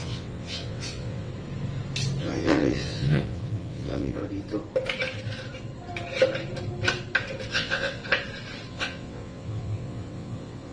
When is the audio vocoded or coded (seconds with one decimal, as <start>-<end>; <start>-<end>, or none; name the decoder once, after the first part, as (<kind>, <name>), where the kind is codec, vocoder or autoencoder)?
0.0-1.3 (vocoder, WaveNeXt); 2.2-4.2; 7.5-8.0; 8.7-10.7